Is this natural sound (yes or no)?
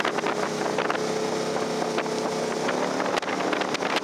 yes